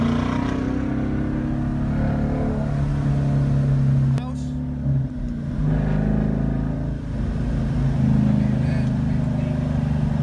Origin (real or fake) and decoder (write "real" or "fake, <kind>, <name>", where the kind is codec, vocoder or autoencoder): real